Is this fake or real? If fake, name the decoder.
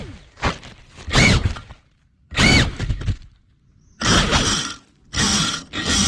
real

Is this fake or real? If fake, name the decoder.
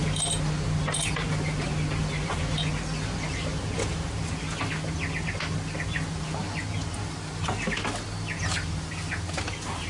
real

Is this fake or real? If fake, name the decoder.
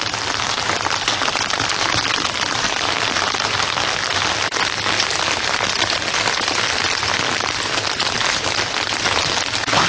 real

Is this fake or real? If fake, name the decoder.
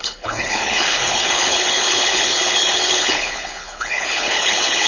fake, codec, HILCodec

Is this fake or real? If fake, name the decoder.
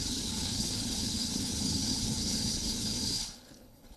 fake, codec, HILCodec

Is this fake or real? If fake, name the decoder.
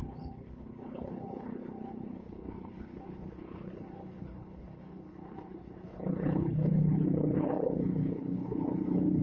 fake, codec, HILCodec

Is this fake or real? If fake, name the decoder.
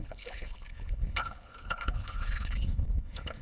fake, codec, HILCodec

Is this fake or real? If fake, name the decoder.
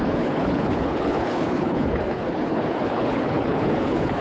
fake, codec, HILCodec